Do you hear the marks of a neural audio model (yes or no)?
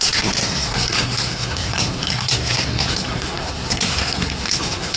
yes